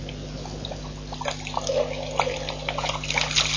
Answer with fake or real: real